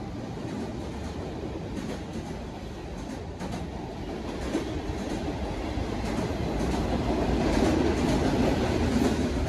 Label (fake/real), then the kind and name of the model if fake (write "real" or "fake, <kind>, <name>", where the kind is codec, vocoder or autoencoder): real